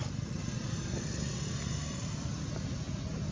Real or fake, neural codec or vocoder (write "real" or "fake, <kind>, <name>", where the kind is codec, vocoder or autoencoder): real